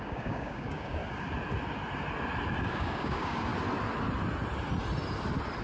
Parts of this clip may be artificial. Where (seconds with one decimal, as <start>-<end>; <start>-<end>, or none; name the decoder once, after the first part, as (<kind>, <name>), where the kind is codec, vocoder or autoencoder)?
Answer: 0.0-1.0 (codec, DAC); 2.7-3.5